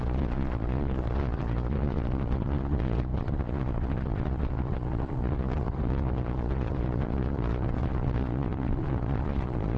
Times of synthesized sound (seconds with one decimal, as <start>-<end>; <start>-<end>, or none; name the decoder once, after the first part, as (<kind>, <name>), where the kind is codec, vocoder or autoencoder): 0.0-9.8 (vocoder, Vocos)